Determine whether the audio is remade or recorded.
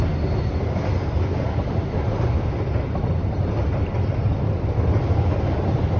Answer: recorded